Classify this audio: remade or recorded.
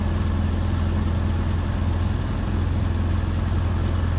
recorded